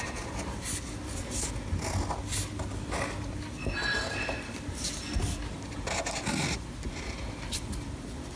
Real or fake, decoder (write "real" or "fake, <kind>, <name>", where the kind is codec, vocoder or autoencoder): real